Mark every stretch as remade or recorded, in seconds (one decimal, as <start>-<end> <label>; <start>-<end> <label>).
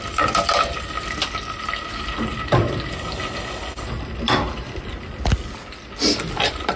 0.0-6.8 recorded